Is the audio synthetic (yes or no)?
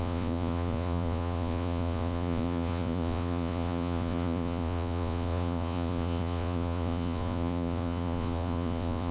yes